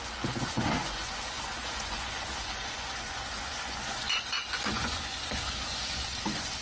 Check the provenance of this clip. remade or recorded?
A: remade